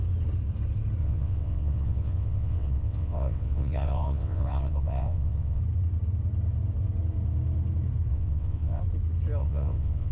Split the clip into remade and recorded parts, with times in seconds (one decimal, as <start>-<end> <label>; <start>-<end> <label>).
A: 0.0-1.0 recorded; 1.0-5.6 remade; 5.6-8.1 recorded; 8.1-8.8 remade; 8.8-9.4 recorded; 9.4-10.1 remade